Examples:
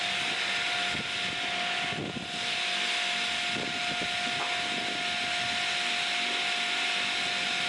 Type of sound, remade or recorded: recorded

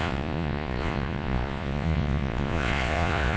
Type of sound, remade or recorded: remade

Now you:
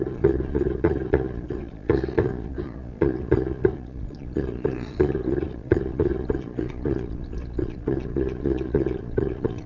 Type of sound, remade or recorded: remade